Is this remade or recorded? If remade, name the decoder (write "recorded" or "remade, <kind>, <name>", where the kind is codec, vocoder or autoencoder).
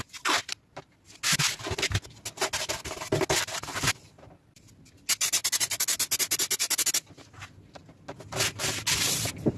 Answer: recorded